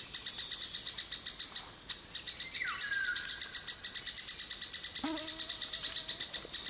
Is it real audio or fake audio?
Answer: real